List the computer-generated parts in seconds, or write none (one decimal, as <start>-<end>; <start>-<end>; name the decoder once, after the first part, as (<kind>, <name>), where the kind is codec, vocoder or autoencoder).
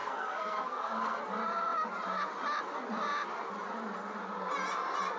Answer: 0.0-1.2 (codec, SNAC)